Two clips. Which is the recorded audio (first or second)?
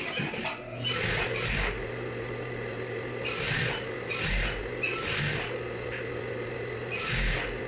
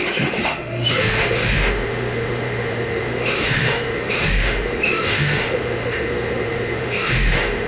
first